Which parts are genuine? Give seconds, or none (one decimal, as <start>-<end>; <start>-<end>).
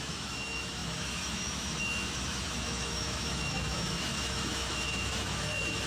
none